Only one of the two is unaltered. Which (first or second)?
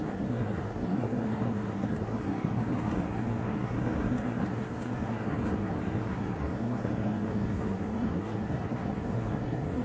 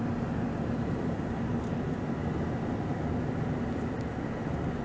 second